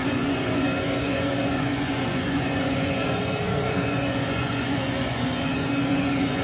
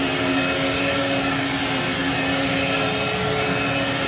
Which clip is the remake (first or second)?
first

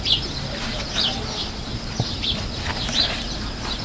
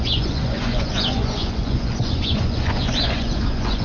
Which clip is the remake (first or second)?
second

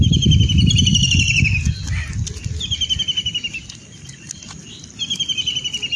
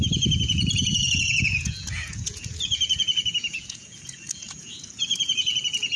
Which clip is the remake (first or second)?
second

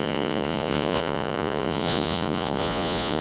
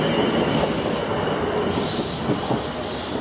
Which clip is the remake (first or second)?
first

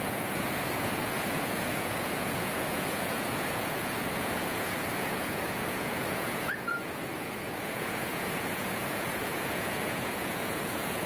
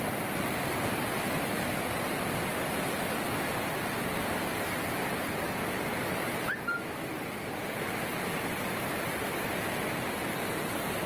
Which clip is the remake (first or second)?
first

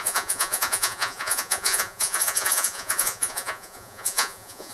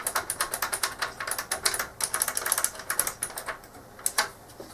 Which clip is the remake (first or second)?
first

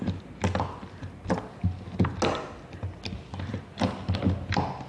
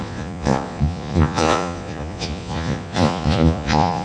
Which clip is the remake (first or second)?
second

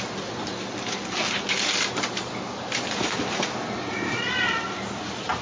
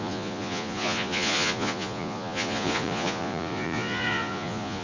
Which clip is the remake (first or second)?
second